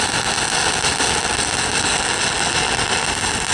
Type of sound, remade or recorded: recorded